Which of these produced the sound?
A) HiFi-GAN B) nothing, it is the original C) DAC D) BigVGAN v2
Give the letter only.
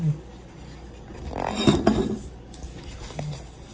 B